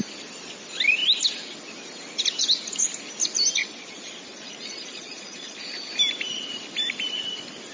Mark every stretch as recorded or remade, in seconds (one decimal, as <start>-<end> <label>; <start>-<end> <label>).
0.0-3.6 recorded; 3.6-5.9 remade; 5.9-7.7 recorded